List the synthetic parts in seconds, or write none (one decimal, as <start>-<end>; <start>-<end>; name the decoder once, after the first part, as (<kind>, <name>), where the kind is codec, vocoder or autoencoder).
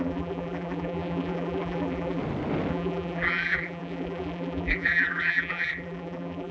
0.0-2.2 (vocoder, BigVGAN v2); 2.7-6.5